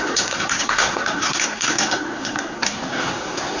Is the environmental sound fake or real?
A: fake